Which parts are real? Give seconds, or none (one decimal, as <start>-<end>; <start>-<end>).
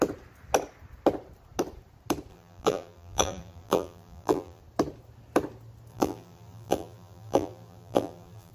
0.0-2.3; 4.6-5.9